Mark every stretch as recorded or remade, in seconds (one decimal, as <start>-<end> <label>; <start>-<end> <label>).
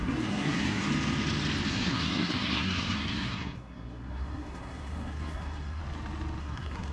0.0-0.9 remade; 0.9-1.7 recorded; 1.7-5.8 remade; 5.8-6.4 recorded; 6.4-6.9 remade